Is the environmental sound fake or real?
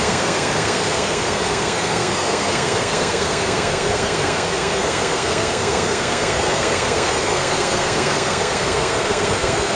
fake